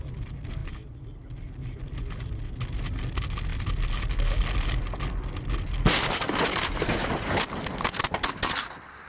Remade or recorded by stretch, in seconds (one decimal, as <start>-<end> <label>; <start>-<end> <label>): 0.0-0.6 recorded; 0.6-1.3 remade; 1.3-9.1 recorded

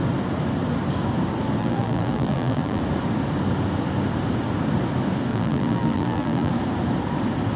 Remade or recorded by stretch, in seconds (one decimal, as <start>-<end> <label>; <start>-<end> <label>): 0.0-1.6 recorded; 1.6-2.8 remade; 2.8-5.3 recorded; 5.3-6.5 remade; 6.5-7.6 recorded

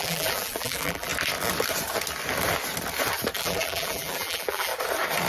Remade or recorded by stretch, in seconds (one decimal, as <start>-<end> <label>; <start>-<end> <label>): 0.0-1.1 remade; 1.1-3.4 recorded; 3.4-4.7 remade; 4.7-5.3 recorded

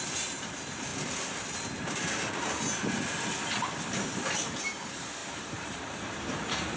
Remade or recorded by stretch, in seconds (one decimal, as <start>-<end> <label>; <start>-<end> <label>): 0.0-0.9 remade; 0.9-3.9 recorded; 3.9-6.8 remade

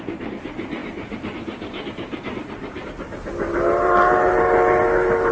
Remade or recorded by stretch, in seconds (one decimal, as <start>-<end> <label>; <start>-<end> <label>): 0.0-0.8 recorded; 0.8-3.3 remade; 3.3-5.3 recorded

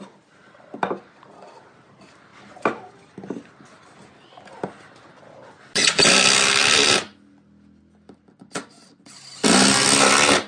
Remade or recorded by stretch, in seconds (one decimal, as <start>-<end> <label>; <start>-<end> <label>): 0.0-10.5 recorded

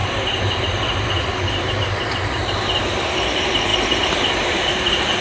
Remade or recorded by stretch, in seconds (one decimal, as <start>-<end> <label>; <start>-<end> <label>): 0.0-2.8 remade; 2.8-5.2 recorded

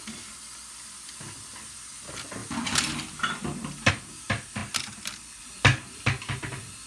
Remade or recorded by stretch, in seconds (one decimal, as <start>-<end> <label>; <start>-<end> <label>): 0.0-6.9 recorded